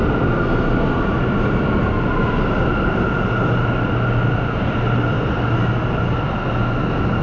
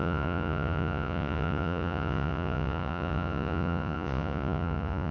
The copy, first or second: second